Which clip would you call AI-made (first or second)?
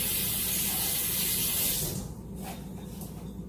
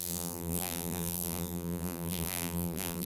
second